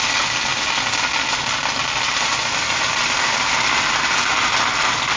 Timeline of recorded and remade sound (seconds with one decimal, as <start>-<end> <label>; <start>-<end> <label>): 0.0-5.2 recorded